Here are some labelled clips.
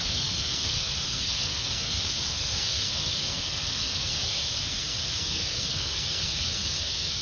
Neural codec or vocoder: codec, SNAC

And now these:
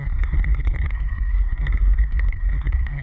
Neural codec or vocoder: codec, SNAC